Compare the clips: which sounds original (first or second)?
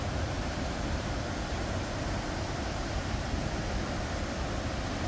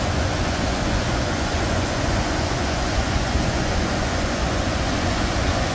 first